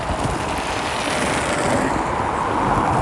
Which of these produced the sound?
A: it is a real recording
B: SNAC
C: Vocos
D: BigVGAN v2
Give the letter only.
A